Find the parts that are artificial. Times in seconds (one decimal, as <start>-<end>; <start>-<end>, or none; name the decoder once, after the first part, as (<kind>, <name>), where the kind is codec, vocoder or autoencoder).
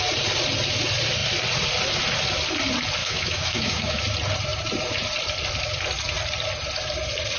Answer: 3.0-4.0 (autoencoder, DAC-VAE)